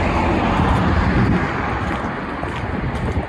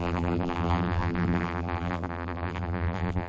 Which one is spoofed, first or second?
second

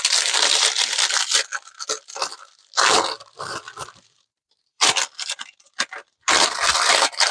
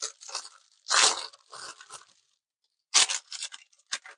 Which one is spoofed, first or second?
first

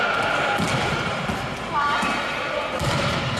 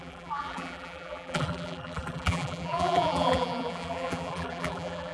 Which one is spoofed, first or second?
second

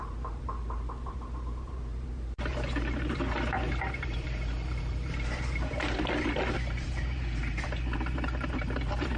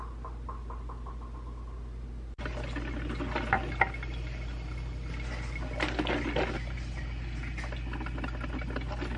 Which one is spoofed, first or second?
first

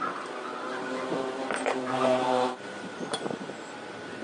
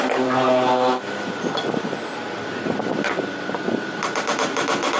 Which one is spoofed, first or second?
first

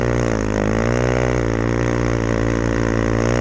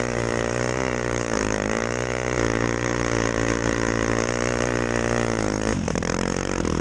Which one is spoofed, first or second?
second